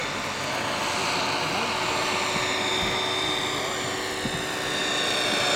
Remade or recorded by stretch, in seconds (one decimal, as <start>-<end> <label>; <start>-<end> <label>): 0.0-5.6 recorded